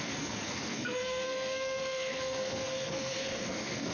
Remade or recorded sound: remade